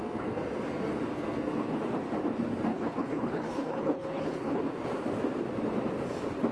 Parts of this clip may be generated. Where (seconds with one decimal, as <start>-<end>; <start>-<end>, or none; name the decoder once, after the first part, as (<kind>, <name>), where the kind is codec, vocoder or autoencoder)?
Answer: 2.7-4.6 (codec, HILCodec)

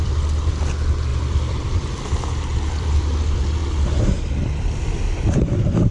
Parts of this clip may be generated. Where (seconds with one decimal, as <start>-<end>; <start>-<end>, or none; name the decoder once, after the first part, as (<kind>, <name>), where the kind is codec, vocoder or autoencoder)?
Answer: 1.1-1.9 (vocoder, BigVGAN v2); 2.5-3.1

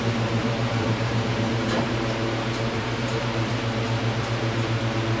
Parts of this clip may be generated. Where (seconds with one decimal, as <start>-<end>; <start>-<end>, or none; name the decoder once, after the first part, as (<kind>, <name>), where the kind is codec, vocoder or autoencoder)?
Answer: 0.4-3.5 (vocoder, BigVGAN v2); 4.0-4.8

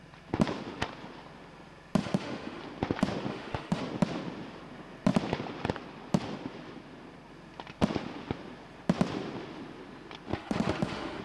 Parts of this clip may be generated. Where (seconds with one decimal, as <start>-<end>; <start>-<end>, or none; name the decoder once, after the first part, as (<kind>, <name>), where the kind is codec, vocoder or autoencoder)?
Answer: 2.0-2.6 (autoencoder, DAC-VAE); 3.3-3.8; 10.3-11.2

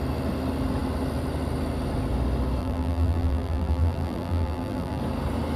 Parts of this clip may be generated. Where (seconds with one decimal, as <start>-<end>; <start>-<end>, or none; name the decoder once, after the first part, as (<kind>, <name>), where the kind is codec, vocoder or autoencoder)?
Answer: 2.6-5.0 (vocoder, BigVGAN v2)

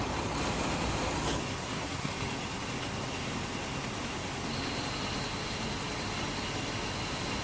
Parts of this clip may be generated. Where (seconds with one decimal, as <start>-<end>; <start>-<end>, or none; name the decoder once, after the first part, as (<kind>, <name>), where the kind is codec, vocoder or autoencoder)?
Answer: 1.6-2.1 (codec, SNAC)

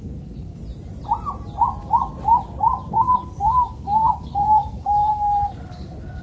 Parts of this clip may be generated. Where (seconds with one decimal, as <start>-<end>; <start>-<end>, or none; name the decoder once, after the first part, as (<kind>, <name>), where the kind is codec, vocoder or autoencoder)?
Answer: 0.0-0.6 (codec, SNAC); 2.9-6.2

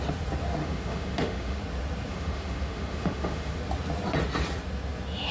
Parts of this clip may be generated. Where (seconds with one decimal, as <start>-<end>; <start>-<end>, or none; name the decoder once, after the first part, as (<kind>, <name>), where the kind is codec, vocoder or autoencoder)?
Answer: 0.6-1.6 (autoencoder, DAC-VAE); 2.1-3.6